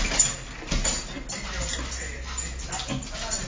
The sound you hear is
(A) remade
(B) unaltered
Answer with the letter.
B